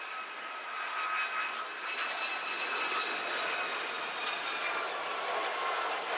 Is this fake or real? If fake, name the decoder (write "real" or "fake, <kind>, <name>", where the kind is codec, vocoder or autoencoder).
real